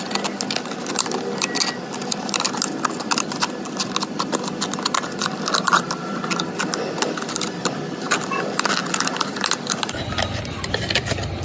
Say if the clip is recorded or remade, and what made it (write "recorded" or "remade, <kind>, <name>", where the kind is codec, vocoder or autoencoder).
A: recorded